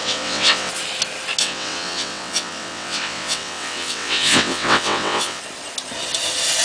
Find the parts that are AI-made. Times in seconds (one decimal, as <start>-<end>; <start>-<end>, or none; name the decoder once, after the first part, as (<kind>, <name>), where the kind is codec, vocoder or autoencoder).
0.0-0.7 (vocoder, WaveNeXt); 1.4-5.4